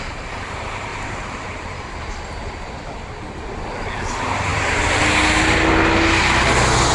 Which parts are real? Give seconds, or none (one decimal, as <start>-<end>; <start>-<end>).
0.0-0.9; 2.1-6.9